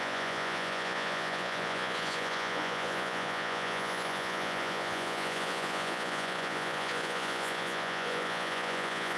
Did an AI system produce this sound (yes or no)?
yes